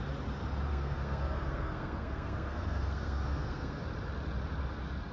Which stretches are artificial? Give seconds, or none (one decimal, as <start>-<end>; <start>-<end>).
0.7-3.8